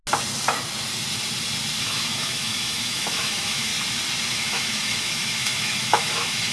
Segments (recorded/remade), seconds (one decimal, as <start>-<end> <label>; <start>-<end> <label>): 0.0-1.8 recorded; 1.8-3.7 remade; 3.7-4.3 recorded; 4.3-6.5 remade